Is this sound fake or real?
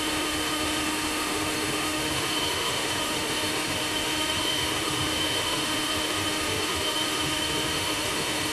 fake